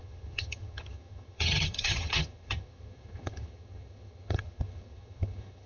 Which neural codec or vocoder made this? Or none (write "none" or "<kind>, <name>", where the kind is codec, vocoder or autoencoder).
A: vocoder, HiFi-GAN